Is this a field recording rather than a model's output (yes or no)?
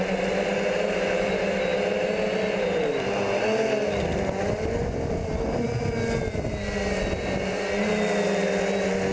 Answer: yes